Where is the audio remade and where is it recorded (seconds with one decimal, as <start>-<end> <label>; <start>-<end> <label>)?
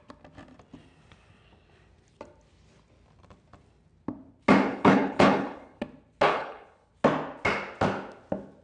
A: 0.0-4.7 recorded; 4.7-5.8 remade; 5.8-6.3 recorded; 6.3-6.9 remade; 6.9-8.6 recorded